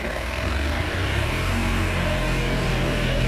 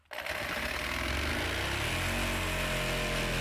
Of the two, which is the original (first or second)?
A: second